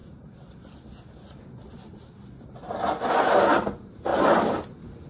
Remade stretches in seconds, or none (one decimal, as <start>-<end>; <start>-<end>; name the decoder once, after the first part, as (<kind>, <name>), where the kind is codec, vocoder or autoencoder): none